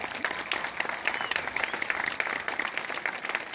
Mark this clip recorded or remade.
recorded